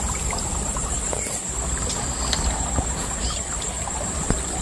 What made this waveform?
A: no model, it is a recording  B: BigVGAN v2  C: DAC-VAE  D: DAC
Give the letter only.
B